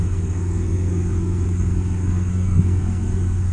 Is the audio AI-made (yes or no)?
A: yes